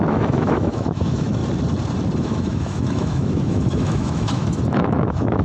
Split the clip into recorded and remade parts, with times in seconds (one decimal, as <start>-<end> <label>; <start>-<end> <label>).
0.0-1.4 remade; 1.4-2.2 recorded; 2.2-5.4 remade